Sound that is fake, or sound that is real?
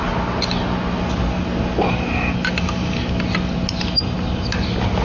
real